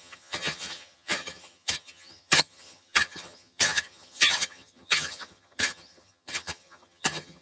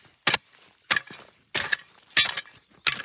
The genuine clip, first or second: second